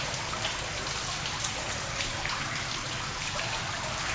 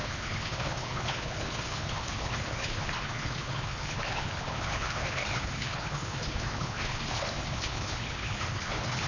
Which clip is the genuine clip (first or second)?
first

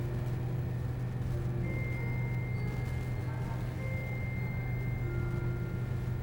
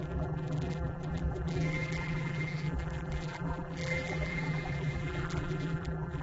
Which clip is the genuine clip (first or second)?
first